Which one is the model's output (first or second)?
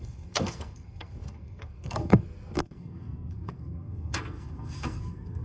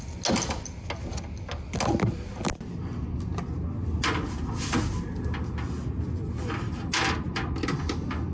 first